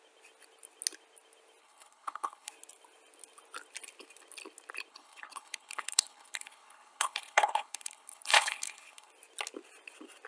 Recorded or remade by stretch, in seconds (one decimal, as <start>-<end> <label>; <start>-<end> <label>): 0.0-1.6 recorded; 1.6-2.5 remade; 2.5-4.9 recorded; 4.9-9.1 remade; 9.1-10.3 recorded